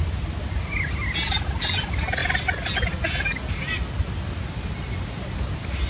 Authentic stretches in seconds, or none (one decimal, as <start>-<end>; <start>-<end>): 0.0-5.9